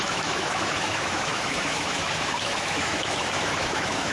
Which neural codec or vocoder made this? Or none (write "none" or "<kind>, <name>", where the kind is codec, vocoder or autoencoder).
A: autoencoder, DAC-VAE